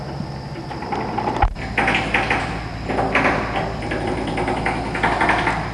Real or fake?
real